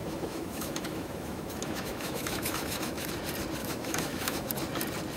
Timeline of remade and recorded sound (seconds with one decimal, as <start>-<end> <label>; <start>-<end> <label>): 0.0-3.1 remade; 3.1-3.6 recorded; 3.6-4.5 remade; 4.5-5.2 recorded